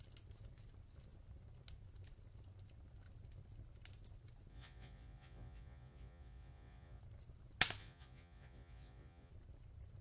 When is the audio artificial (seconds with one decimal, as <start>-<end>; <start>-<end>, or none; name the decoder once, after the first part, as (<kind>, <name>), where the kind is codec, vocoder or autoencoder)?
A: 4.5-7.0 (vocoder, Vocos); 7.8-9.3